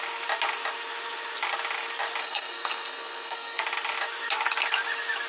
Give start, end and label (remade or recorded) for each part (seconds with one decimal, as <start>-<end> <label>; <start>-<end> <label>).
0.0-2.2 recorded; 2.2-3.6 remade; 3.6-5.3 recorded